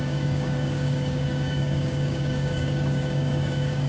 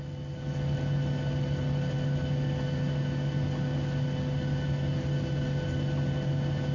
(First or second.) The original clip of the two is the second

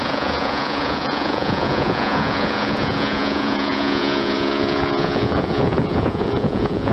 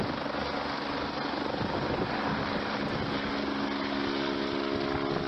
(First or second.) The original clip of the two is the second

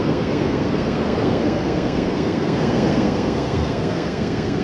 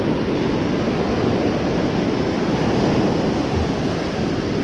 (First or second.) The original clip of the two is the second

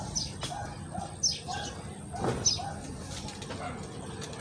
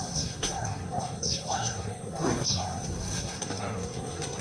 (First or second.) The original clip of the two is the first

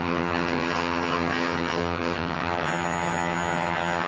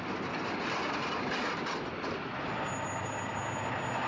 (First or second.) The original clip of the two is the second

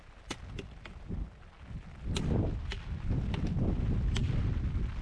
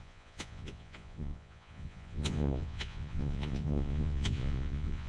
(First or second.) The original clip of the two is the first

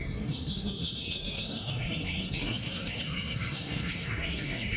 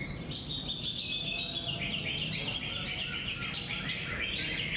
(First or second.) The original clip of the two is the second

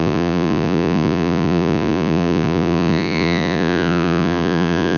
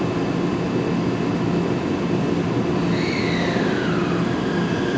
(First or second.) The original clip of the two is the second